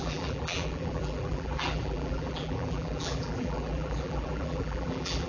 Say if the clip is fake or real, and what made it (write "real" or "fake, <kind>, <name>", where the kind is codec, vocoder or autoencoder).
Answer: fake, vocoder, BigVGAN v2